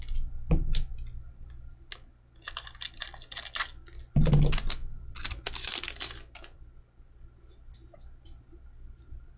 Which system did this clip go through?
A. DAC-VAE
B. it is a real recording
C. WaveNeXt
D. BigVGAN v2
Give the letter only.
B